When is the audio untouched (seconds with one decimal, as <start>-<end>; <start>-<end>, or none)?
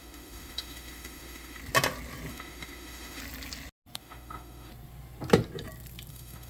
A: 1.6-2.3; 3.2-4.0; 4.7-6.1